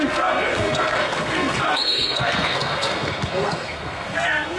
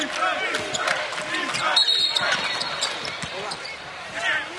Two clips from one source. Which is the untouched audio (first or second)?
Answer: second